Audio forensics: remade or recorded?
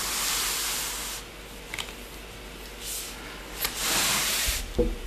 recorded